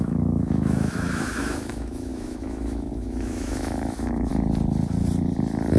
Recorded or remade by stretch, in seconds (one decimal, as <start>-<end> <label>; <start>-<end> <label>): 0.0-4.3 remade; 4.3-5.8 recorded